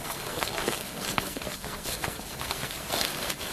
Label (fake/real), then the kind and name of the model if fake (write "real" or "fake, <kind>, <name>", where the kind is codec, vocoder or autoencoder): fake, codec, SNAC